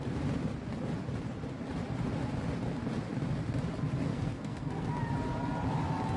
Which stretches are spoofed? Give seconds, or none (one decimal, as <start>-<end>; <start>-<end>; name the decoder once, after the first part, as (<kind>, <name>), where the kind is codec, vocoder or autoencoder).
4.1-4.9 (codec, SNAC)